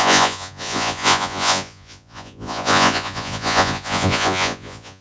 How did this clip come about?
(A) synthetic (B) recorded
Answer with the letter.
A